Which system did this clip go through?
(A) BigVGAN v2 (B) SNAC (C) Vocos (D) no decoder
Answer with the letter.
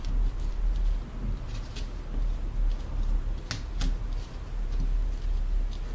D